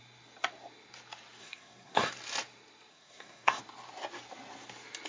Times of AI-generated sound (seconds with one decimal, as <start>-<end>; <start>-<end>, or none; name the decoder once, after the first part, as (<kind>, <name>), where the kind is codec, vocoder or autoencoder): 1.4-2.1 (codec, SNAC); 2.9-3.6